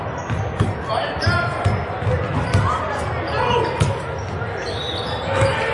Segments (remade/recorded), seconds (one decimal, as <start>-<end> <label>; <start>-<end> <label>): 0.0-5.7 recorded